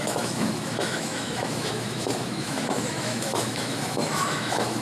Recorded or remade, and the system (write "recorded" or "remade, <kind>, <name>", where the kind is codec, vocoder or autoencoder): remade, autoencoder, DAC-VAE